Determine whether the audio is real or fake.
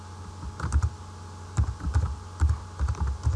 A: real